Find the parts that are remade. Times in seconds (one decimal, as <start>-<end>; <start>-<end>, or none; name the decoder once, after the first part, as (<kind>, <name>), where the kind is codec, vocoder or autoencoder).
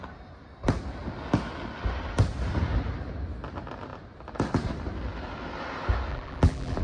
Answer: 6.1-6.8 (vocoder, BigVGAN v2)